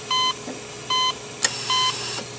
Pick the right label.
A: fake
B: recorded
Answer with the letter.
B